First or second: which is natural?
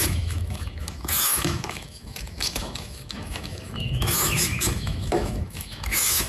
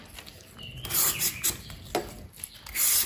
second